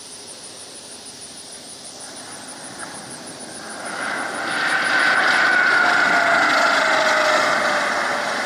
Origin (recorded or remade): recorded